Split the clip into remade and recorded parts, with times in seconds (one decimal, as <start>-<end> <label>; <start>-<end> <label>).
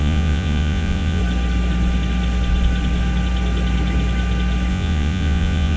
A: 0.0-1.2 remade; 1.2-4.7 recorded; 4.7-5.8 remade